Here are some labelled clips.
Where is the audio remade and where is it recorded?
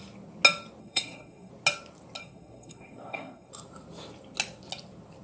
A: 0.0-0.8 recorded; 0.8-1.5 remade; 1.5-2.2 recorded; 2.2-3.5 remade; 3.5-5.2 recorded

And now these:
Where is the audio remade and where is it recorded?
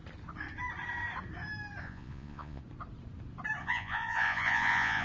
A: 0.0-1.8 recorded; 1.8-2.6 remade; 2.6-3.6 recorded; 3.6-5.0 remade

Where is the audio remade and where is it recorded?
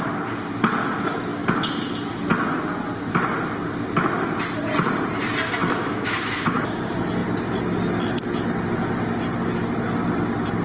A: 0.0-5.6 recorded; 5.6-6.8 remade; 6.8-10.6 recorded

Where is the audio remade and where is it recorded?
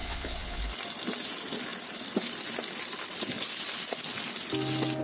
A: 0.0-0.6 remade; 0.6-5.0 recorded